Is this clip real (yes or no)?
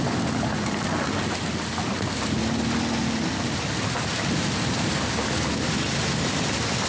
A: yes